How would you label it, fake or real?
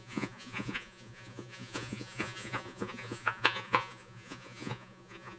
fake